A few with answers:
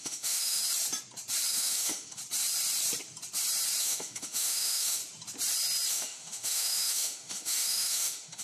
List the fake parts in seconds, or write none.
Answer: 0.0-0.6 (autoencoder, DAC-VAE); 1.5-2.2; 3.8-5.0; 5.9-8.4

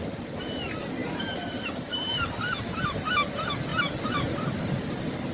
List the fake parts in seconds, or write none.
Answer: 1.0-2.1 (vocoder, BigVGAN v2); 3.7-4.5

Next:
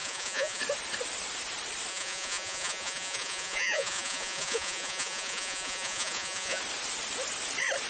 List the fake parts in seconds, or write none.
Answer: 0.0-0.6 (vocoder, Vocos); 1.9-6.6